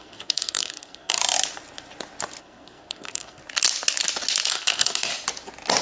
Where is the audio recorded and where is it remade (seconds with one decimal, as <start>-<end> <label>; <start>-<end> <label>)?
0.0-1.2 remade; 1.2-2.4 recorded; 2.4-3.4 remade; 3.4-4.5 recorded; 4.5-5.1 remade; 5.1-5.8 recorded